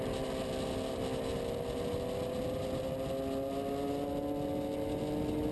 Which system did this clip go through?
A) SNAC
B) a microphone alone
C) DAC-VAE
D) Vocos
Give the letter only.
B